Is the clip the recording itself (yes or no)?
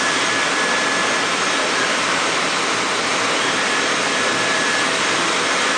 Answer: no